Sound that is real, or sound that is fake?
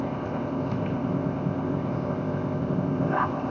fake